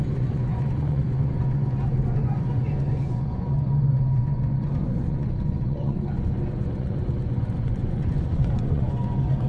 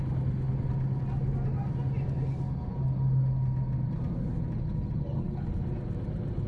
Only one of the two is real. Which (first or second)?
second